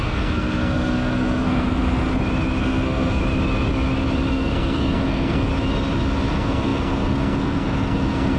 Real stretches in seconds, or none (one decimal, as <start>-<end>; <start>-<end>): 2.1-2.6; 3.2-4.3; 5.5-6.3

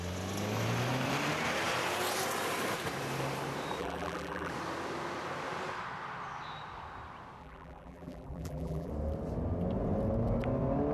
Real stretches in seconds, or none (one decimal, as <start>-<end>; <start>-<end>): 0.0-3.8; 4.5-7.4; 8.9-10.9

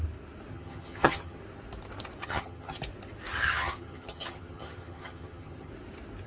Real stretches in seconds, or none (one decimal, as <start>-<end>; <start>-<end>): 0.0-0.5; 1.4-2.2; 2.8-3.3; 5.7-6.3